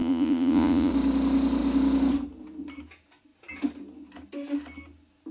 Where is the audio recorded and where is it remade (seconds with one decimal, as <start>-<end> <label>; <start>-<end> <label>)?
0.0-0.9 remade; 0.9-5.3 recorded